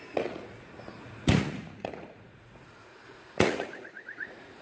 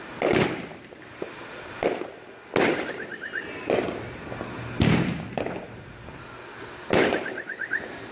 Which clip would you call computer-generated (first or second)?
first